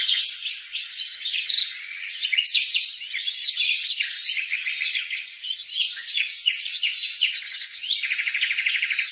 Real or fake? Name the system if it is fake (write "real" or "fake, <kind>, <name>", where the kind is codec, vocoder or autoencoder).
fake, vocoder, Vocos